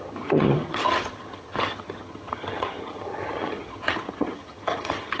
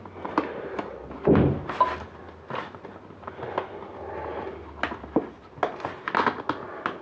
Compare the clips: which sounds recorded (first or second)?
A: second